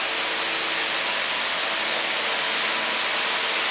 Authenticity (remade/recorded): recorded